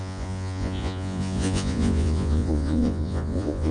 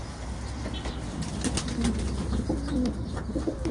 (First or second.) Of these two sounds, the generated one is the first